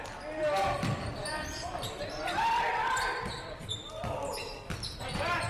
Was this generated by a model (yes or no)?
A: no